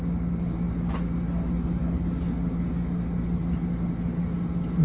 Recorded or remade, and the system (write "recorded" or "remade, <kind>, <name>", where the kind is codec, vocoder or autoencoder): recorded